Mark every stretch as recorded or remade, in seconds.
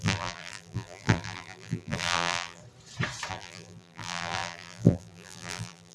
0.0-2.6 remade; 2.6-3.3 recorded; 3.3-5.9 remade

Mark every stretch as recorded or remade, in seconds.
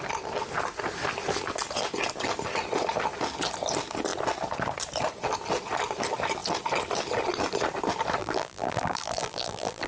0.0-8.2 recorded; 8.2-9.9 remade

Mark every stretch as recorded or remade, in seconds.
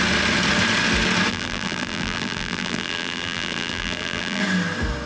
0.0-1.3 recorded; 1.3-4.4 remade; 4.4-5.1 recorded